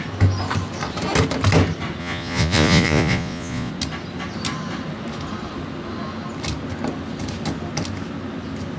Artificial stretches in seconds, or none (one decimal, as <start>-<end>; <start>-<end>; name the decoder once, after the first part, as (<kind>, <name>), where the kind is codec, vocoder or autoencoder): 2.0-3.7 (vocoder, Vocos)